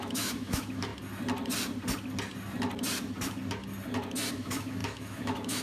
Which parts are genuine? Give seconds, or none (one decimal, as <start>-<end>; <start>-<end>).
0.9-4.3